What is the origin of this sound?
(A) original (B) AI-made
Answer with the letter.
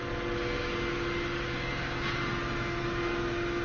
A